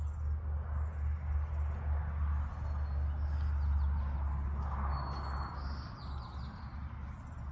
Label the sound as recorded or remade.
recorded